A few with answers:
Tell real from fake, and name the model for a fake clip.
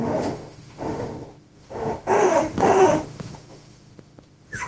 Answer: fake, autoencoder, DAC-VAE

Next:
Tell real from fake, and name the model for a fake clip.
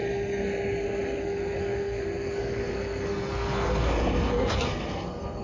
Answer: fake, codec, SNAC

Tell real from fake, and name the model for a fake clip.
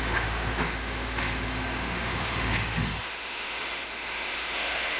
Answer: fake, autoencoder, DAC-VAE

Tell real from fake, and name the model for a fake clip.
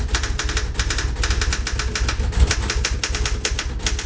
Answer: real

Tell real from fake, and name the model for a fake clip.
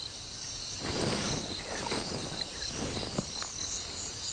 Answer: real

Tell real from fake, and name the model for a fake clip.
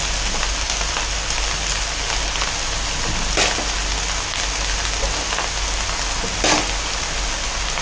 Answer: real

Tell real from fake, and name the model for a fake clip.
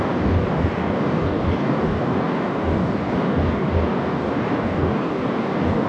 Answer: fake, codec, DAC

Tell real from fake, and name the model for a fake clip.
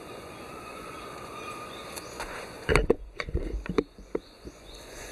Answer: fake, vocoder, Vocos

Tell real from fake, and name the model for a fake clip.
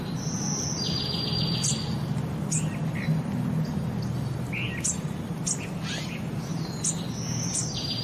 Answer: real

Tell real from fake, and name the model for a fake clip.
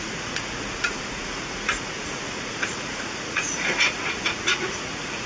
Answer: fake, vocoder, Vocos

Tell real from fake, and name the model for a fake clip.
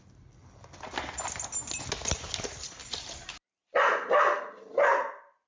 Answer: real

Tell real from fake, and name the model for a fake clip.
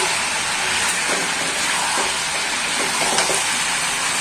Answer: real